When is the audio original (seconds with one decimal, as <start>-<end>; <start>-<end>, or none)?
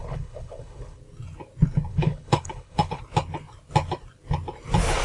1.0-1.9; 3.0-5.0